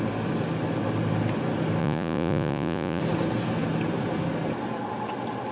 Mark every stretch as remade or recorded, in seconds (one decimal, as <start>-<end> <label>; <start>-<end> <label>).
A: 0.0-1.8 recorded; 1.8-3.0 remade; 3.0-5.5 recorded